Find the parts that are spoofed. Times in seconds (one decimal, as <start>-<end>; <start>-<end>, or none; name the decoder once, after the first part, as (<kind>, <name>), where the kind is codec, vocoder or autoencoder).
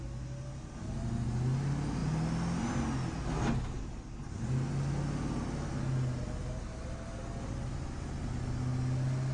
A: none